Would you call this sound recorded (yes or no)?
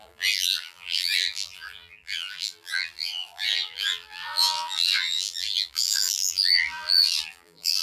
no